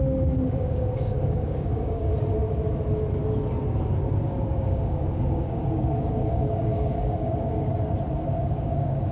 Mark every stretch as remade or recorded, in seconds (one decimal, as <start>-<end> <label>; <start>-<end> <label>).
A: 0.0-2.1 remade; 2.1-4.2 recorded; 4.2-7.7 remade; 7.7-8.3 recorded; 8.3-9.1 remade